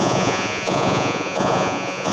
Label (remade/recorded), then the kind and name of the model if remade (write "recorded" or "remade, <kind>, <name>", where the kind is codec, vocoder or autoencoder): remade, vocoder, Vocos